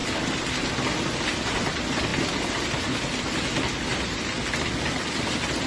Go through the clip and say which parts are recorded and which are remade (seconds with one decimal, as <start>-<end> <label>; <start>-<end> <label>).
0.0-5.7 recorded